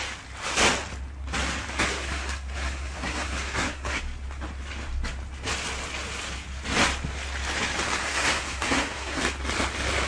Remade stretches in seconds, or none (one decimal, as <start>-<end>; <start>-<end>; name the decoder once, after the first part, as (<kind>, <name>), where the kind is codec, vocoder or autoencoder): 1.9-4.0 (codec, SNAC); 8.0-9.2